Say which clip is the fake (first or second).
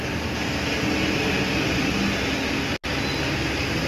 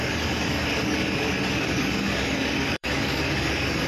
second